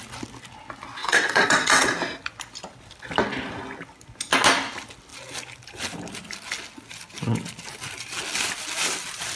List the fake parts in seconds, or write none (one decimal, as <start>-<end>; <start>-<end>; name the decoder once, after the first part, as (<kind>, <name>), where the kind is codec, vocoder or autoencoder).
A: 1.0-1.9 (vocoder, WaveNeXt)